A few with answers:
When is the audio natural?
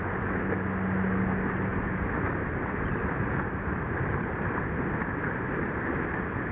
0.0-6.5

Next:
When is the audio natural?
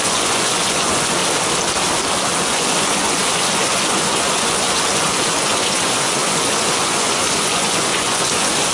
1.2-2.4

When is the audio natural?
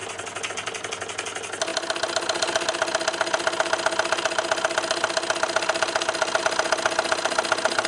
0.0-7.9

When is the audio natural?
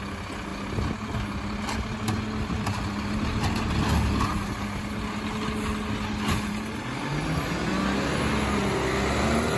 0.0-9.6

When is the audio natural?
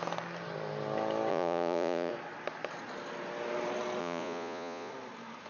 0.0-1.3; 2.1-4.0; 4.9-5.5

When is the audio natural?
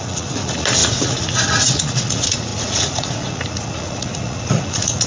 none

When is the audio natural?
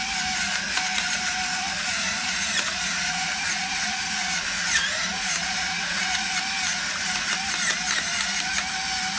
0.0-1.5; 6.3-9.2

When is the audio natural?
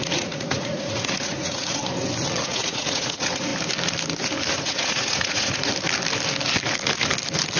1.8-2.4; 3.5-4.5; 5.7-7.6